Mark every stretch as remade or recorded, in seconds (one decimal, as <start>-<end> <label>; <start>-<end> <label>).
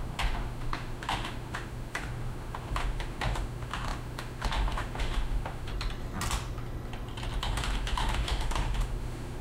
0.0-5.7 remade; 5.7-7.4 recorded; 7.4-9.4 remade